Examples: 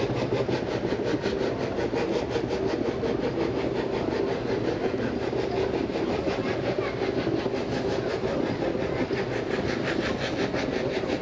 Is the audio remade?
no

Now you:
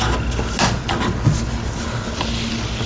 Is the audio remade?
no